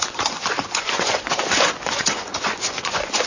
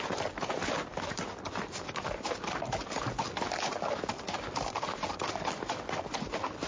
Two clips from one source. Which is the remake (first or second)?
first